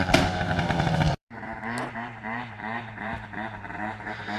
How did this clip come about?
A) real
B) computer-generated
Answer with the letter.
B